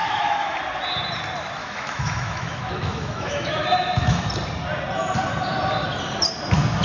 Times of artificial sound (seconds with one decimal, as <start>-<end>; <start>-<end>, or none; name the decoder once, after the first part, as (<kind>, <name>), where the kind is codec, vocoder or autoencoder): 0.0-0.6 (autoencoder, DAC-VAE); 1.6-4.3